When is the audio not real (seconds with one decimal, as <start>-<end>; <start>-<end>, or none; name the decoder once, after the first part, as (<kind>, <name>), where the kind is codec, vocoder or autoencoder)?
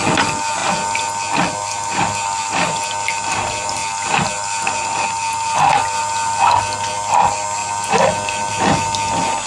none